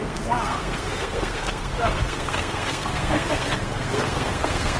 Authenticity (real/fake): fake